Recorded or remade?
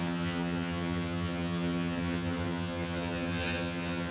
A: remade